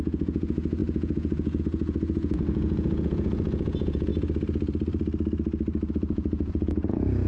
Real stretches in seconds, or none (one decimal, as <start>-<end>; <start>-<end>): 4.1-5.9